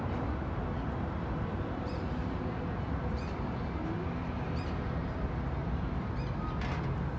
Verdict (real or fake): real